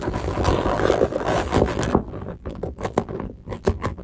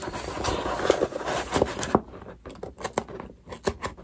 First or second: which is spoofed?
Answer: first